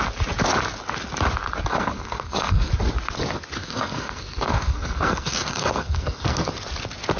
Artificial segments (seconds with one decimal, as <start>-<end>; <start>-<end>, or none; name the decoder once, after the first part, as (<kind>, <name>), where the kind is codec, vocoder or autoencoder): 1.7-2.7 (codec, SNAC); 3.6-6.5